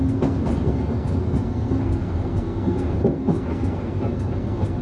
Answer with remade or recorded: remade